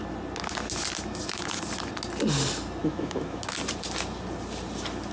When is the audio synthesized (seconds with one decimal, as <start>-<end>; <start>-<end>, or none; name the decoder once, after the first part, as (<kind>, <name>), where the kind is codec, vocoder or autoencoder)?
2.8-3.4 (autoencoder, DAC-VAE)